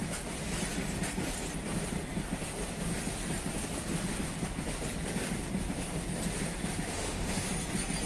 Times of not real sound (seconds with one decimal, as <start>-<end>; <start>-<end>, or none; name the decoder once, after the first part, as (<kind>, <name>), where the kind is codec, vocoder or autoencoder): 6.9-7.5 (autoencoder, DAC-VAE)